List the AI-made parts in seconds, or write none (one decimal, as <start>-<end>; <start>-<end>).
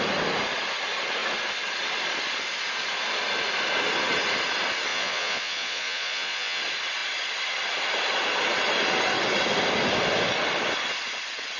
4.9-6.6